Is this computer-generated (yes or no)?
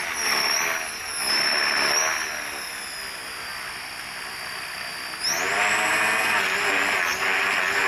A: no